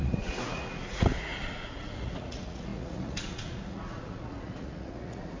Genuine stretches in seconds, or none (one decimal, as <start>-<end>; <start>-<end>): none

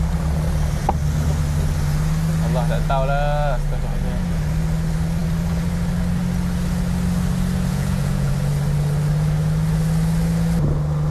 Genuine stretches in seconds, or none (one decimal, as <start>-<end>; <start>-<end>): 0.0-7.7; 8.3-11.1

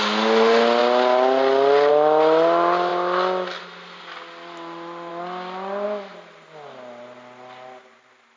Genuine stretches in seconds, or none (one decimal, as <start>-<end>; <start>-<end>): 0.0-8.4

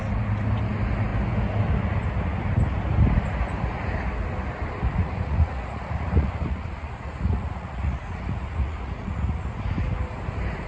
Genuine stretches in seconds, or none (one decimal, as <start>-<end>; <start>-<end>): 0.0-5.0; 9.4-10.7

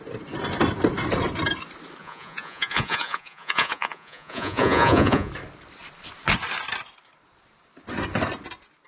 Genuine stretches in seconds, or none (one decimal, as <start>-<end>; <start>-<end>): 0.0-2.0; 5.3-8.9

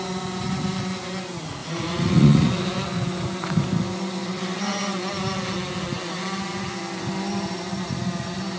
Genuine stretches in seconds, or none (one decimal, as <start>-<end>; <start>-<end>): 0.0-1.6; 2.5-8.6

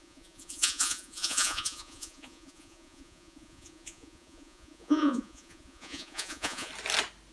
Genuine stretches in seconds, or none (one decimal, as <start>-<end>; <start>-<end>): 6.7-7.3

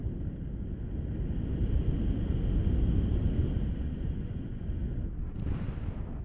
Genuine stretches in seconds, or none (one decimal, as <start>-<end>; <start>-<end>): 0.0-3.7; 4.8-6.2